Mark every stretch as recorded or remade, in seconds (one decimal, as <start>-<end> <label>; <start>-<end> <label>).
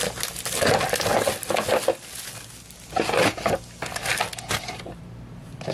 0.0-5.7 recorded